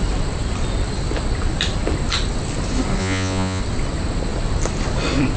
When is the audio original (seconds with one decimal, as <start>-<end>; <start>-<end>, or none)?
0.0-3.0; 3.6-5.4